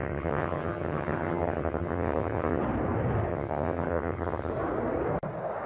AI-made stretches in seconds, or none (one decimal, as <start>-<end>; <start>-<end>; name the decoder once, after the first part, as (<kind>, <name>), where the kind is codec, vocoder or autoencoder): 0.0-2.6 (vocoder, HiFi-GAN); 3.3-4.5